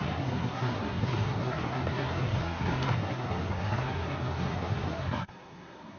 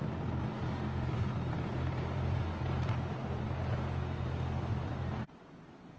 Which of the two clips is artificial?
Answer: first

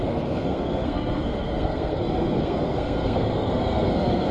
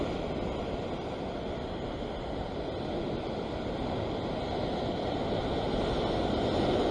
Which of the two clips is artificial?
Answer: first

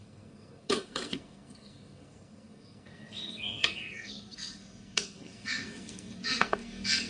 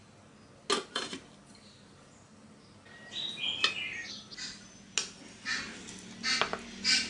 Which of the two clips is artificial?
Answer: first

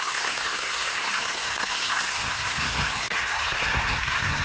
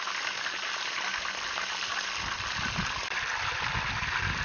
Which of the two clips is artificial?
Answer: first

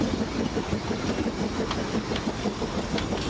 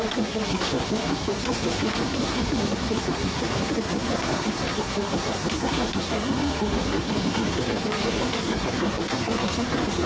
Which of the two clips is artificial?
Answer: second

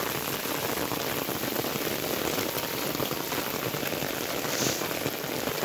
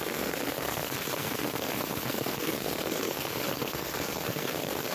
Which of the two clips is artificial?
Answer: second